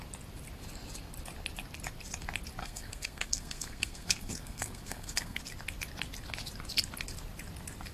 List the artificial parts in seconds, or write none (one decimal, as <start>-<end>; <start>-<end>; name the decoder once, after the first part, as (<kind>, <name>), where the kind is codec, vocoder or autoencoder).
2.6-5.4 (codec, SNAC)